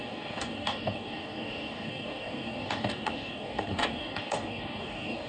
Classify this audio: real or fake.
fake